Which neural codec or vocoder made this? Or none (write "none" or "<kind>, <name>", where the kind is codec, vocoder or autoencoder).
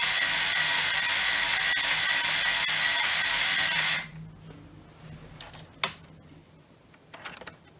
none